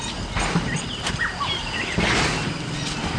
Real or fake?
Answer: real